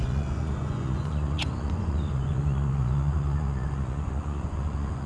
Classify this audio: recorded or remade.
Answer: remade